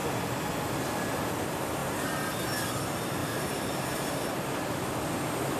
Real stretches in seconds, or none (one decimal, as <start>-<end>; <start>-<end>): 0.0-5.6